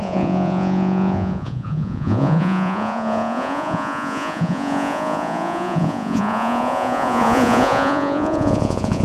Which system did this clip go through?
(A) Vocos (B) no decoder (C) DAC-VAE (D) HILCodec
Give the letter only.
A